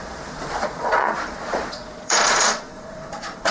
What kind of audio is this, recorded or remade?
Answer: remade